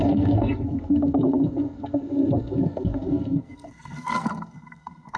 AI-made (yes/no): yes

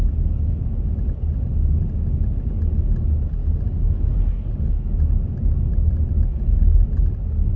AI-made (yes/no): no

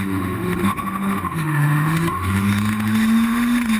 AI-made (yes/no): yes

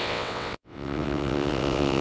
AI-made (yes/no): yes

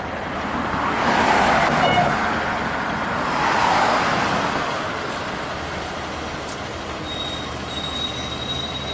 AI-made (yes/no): no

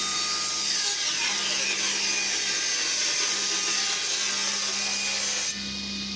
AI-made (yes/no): no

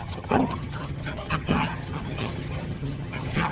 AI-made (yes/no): yes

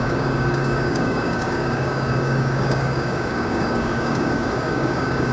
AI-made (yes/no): yes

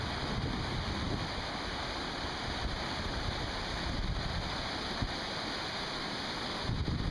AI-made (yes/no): no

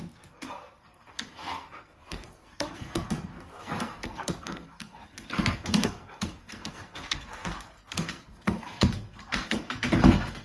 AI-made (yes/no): yes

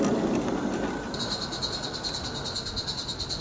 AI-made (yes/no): no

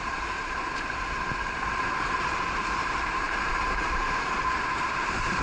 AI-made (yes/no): yes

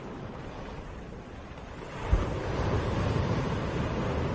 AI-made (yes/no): yes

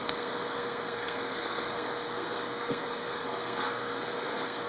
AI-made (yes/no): yes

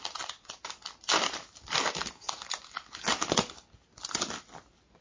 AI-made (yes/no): no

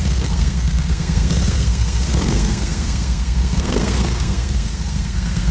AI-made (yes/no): yes